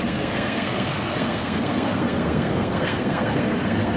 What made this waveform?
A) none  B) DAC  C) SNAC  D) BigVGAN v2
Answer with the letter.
C